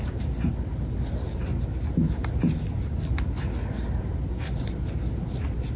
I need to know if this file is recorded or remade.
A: recorded